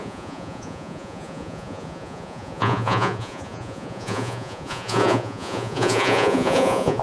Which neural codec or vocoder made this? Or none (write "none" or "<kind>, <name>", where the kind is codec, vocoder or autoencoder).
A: vocoder, Vocos